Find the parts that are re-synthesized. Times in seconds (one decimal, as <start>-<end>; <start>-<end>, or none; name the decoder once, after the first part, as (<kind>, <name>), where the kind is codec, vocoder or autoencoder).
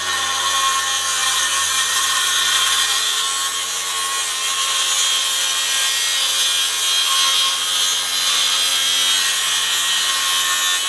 1.2-3.2 (vocoder, BigVGAN v2); 5.2-6.0